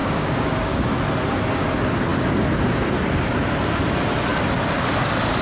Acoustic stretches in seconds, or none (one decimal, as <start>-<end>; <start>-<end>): 0.9-5.4